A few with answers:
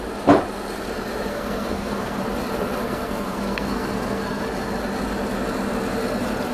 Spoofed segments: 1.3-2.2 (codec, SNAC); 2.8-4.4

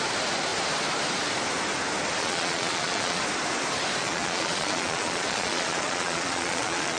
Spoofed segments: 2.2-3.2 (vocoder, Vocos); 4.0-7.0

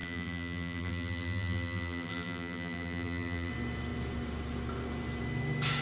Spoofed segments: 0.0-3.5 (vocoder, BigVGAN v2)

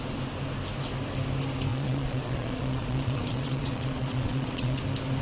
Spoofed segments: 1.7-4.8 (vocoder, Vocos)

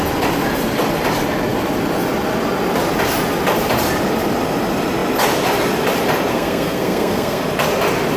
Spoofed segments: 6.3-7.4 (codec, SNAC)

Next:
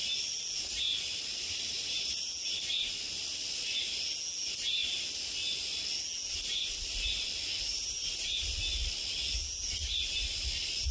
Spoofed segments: 1.3-2.3 (vocoder, BigVGAN v2); 7.7-8.5

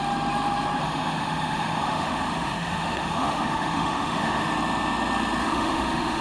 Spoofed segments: 0.8-4.5 (autoencoder, DAC-VAE); 5.4-6.2